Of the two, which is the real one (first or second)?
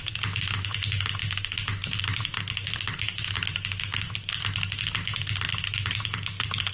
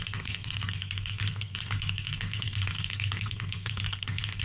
first